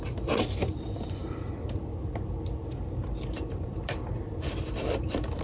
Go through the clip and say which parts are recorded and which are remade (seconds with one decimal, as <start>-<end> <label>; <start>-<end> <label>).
0.0-1.2 remade; 1.2-3.6 recorded; 3.6-5.4 remade